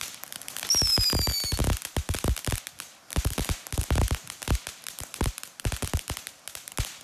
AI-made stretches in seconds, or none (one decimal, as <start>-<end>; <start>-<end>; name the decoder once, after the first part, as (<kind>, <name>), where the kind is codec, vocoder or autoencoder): none